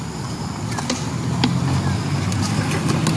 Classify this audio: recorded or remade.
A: recorded